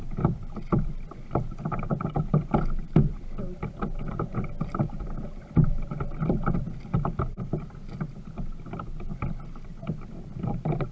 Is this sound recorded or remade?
recorded